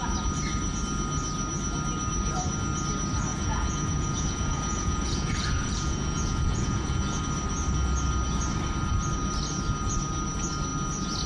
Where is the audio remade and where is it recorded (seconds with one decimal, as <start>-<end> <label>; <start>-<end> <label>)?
0.0-3.3 recorded; 3.3-7.2 remade; 7.2-11.3 recorded